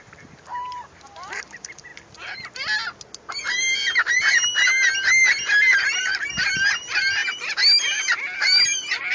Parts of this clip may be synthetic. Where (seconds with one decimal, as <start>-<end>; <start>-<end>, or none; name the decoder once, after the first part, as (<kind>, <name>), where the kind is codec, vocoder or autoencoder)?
0.0-1.9 (vocoder, BigVGAN v2); 5.1-9.1